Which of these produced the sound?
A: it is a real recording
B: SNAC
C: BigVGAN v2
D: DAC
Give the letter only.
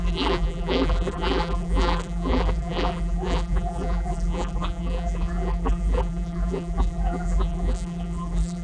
C